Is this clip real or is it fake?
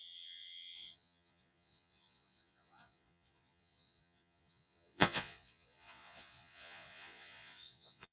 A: fake